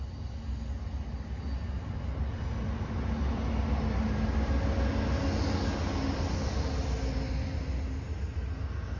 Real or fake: real